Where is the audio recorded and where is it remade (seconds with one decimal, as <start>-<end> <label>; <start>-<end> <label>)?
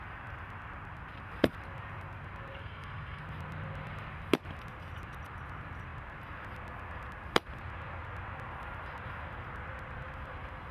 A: 0.0-2.6 recorded; 2.6-3.2 remade; 3.2-10.7 recorded